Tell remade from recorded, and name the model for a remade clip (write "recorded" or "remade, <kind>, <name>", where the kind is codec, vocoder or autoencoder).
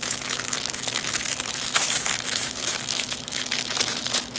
remade, autoencoder, DAC-VAE